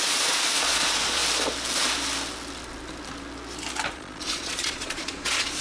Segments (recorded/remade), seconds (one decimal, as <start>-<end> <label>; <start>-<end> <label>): 0.0-1.2 remade; 1.2-3.9 recorded; 3.9-5.6 remade